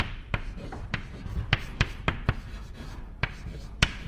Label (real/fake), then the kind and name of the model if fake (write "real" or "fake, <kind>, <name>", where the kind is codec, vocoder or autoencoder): fake, vocoder, BigVGAN v2